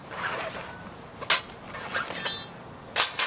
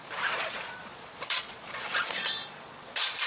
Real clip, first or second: first